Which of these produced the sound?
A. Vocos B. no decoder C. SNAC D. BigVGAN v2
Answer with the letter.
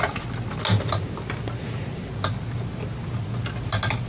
B